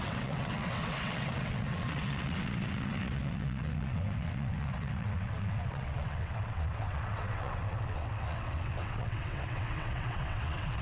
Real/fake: fake